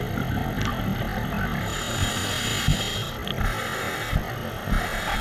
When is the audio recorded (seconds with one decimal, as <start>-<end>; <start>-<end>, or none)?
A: 0.0-5.2